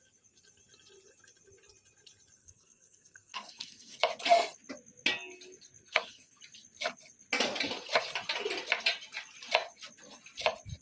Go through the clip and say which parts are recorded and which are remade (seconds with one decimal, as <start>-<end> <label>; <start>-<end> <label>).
0.0-2.4 recorded; 2.4-4.0 remade; 4.0-5.8 recorded; 5.8-6.4 remade; 6.4-10.8 recorded